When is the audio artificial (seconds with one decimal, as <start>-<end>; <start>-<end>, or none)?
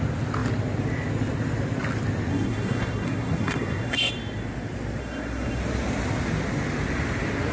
2.3-4.1; 5.0-5.6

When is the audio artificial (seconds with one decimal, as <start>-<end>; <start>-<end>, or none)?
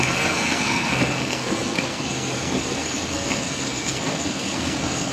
0.0-5.1